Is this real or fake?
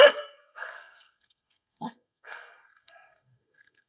fake